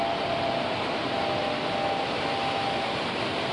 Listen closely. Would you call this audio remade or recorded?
recorded